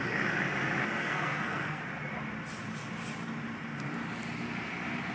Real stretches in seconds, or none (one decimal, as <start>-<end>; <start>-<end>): 0.0-0.8; 1.8-5.1